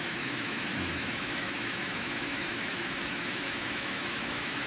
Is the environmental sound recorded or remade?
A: remade